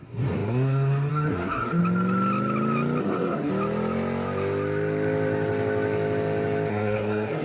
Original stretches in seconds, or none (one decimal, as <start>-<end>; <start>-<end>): 1.8-3.0; 3.5-6.7